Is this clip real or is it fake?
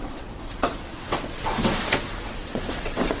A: fake